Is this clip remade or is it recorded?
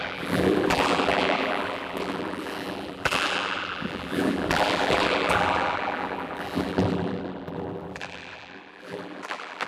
remade